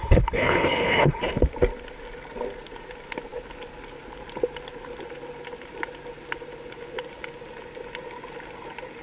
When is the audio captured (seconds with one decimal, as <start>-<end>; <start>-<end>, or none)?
1.2-9.0